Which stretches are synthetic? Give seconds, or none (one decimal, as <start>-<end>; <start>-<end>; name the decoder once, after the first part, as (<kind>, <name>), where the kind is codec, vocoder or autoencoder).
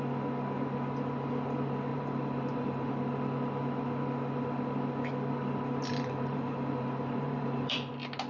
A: 1.9-2.9 (vocoder, BigVGAN v2); 5.9-7.9